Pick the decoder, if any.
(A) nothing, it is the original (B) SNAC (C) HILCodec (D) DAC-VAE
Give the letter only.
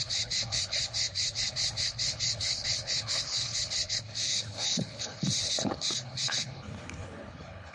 C